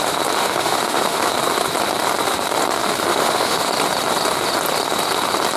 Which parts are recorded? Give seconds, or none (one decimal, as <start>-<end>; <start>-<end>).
0.0-0.4; 1.3-3.1; 3.7-5.6